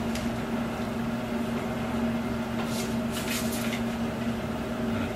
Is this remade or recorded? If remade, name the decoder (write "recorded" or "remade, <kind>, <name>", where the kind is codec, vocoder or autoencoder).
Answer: recorded